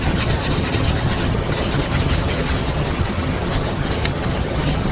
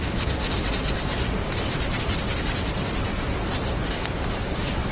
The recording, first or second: second